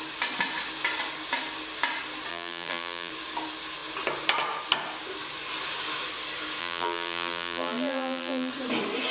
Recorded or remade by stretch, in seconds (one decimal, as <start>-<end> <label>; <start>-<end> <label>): 0.0-2.3 recorded; 2.3-3.1 remade; 3.1-6.6 recorded; 6.6-8.5 remade; 8.5-9.1 recorded